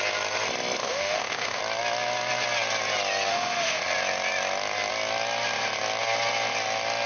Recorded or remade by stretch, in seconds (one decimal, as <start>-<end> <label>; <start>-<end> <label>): 0.0-0.8 recorded; 0.8-1.6 remade; 1.6-3.3 recorded; 3.3-3.8 remade; 3.8-7.1 recorded